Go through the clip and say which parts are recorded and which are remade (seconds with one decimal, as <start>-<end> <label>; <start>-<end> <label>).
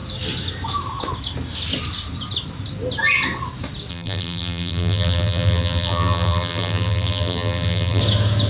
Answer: 0.0-3.9 recorded; 3.9-8.0 remade; 8.0-8.5 recorded